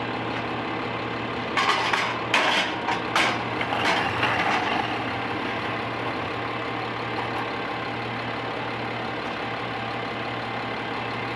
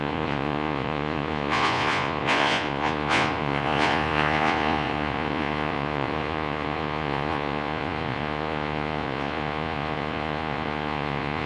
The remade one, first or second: second